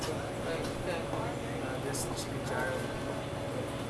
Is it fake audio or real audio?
real